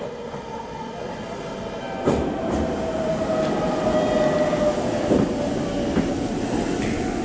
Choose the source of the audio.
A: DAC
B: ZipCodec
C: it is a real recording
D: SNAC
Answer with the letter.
C